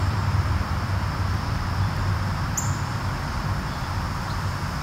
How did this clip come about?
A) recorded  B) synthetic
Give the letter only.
B